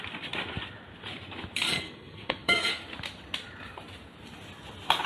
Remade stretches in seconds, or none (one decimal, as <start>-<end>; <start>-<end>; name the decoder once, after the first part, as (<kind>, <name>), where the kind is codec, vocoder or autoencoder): 1.7-2.7 (codec, SNAC)